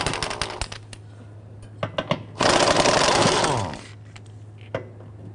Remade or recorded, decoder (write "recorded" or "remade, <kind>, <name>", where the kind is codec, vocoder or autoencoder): recorded